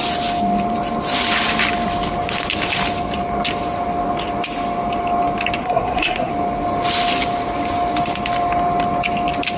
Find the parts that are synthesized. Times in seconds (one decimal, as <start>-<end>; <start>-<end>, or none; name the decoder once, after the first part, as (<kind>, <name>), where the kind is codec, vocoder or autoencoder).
5.6-6.3 (codec, SNAC)